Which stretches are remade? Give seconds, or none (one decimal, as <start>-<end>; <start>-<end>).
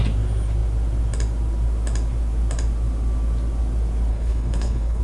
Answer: 4.1-5.0